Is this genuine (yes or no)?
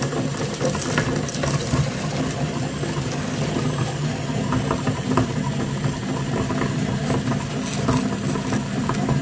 yes